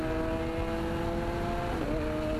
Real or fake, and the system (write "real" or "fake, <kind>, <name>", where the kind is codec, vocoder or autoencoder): real